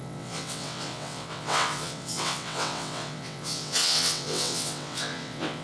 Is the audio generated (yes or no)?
yes